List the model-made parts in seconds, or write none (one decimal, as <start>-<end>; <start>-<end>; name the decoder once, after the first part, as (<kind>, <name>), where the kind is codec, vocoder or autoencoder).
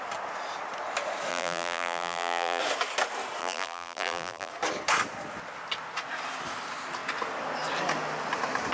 1.3-2.6 (vocoder, BigVGAN v2); 3.4-4.5